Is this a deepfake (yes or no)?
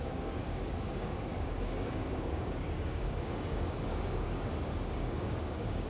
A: yes